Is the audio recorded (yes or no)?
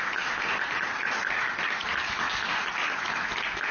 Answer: yes